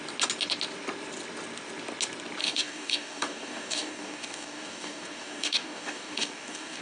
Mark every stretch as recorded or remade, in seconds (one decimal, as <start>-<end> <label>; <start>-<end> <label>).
0.0-2.4 recorded; 2.4-6.8 remade